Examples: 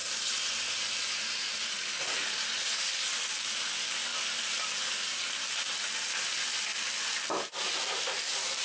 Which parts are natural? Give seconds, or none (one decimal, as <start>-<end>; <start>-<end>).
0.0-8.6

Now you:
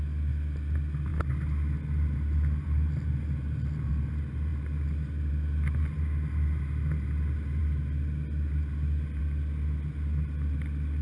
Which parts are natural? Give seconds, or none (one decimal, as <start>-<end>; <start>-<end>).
0.0-11.0

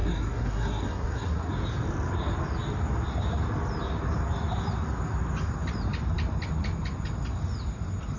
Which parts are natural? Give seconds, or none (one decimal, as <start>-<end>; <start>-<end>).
1.5-8.2